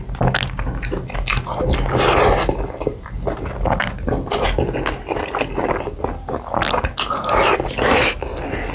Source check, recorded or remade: recorded